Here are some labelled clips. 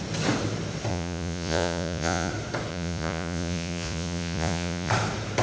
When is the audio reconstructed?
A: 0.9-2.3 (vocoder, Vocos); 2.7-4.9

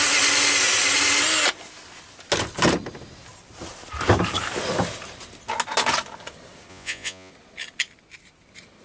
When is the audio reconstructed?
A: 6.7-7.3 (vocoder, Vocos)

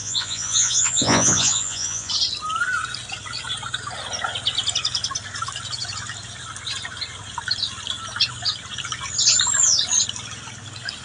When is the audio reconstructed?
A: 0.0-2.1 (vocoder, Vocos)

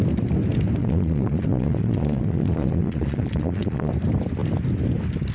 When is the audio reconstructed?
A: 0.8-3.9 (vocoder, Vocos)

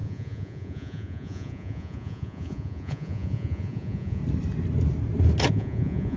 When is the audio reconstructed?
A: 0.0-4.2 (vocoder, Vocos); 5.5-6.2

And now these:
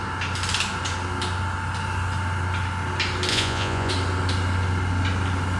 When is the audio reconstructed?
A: 3.3-3.9 (vocoder, Vocos)

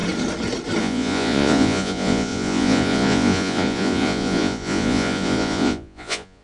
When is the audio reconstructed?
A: 0.8-6.4 (vocoder, Vocos)

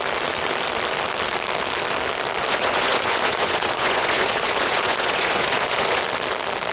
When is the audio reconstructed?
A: 2.5-6.0 (vocoder, Vocos)